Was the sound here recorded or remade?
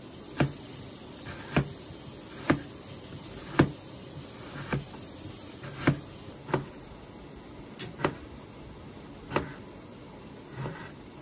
recorded